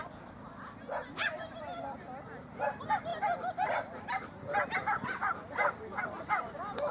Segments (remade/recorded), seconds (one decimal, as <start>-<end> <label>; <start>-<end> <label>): 0.0-6.9 recorded